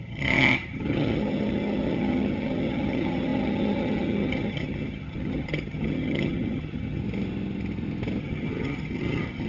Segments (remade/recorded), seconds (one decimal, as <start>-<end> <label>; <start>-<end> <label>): 0.0-7.0 remade; 7.0-8.2 recorded; 8.2-9.5 remade